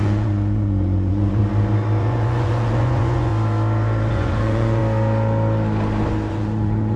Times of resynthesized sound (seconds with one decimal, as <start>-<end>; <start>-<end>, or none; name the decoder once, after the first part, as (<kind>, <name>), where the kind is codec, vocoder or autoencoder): 0.0-1.4 (vocoder, Vocos); 2.0-3.3; 4.1-4.8; 6.3-7.0